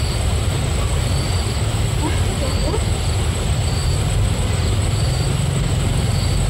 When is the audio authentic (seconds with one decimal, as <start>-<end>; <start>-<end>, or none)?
0.0-6.5

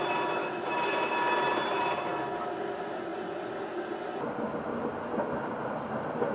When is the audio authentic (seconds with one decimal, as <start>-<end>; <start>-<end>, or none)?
3.1-4.9